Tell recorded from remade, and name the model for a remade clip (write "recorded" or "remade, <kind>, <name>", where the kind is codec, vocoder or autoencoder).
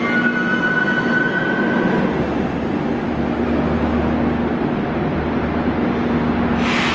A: recorded